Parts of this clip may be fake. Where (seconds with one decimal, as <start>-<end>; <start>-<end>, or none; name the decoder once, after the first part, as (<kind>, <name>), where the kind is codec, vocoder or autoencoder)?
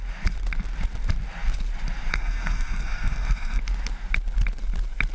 2.1-3.6 (codec, SNAC)